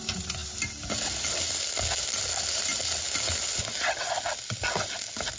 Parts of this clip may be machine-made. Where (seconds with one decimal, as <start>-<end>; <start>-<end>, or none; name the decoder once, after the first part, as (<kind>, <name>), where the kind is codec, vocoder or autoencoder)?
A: none